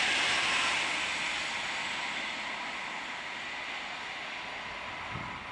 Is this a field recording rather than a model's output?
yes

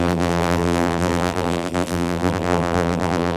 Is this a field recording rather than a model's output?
no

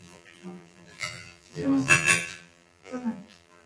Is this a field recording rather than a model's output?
no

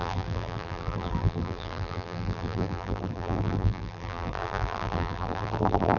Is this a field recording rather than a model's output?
no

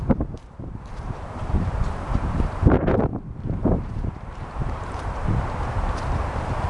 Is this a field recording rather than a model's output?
no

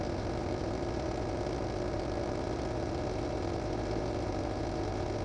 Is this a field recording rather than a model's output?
yes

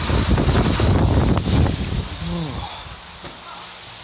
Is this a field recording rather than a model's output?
yes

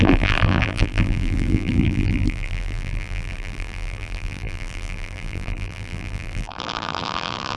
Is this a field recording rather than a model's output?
no